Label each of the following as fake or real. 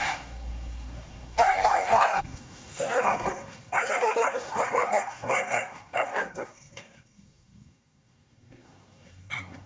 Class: fake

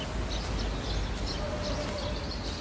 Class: real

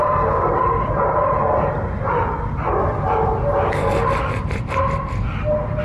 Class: real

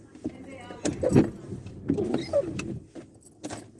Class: real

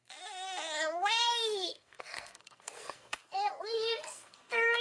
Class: fake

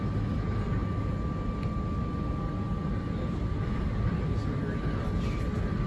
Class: real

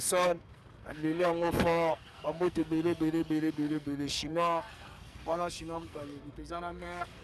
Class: fake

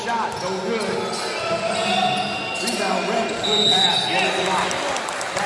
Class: real